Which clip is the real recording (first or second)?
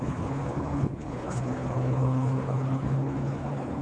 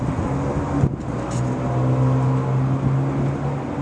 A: second